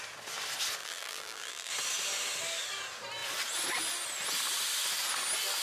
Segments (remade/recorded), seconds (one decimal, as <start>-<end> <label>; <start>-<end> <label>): 0.0-0.8 recorded; 0.8-1.7 remade; 1.7-5.6 recorded